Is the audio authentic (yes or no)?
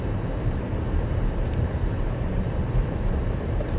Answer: no